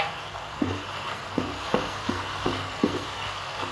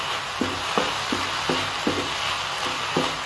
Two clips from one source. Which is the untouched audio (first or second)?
second